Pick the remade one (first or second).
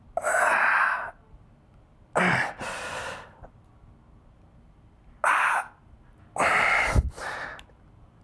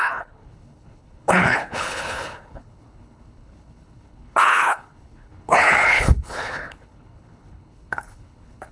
second